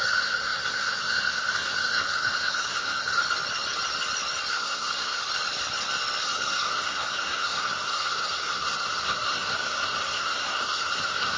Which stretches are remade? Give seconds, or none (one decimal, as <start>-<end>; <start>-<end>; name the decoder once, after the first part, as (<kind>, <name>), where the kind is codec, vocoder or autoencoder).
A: 0.0-3.2 (codec, SNAC); 4.5-5.2; 6.2-11.4